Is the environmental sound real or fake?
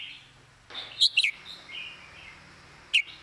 real